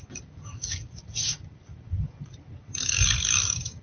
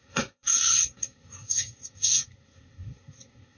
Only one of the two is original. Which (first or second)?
first